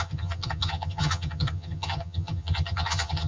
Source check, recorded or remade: remade